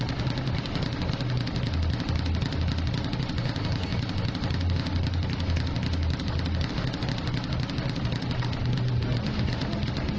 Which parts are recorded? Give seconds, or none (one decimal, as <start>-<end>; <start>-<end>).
0.0-10.2